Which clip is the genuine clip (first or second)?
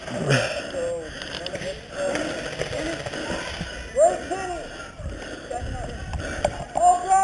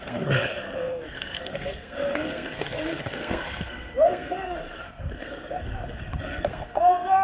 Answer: first